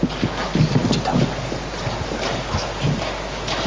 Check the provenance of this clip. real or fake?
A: real